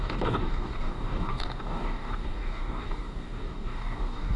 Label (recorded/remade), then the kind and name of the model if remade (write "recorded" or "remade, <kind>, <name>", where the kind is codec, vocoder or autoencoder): remade, codec, DAC